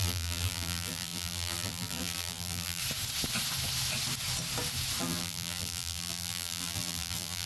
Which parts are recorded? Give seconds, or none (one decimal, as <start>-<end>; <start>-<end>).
2.8-5.0